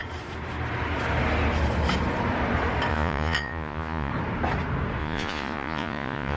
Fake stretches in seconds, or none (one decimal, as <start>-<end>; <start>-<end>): 2.9-4.1; 5.0-6.4